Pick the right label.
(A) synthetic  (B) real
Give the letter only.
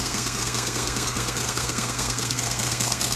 A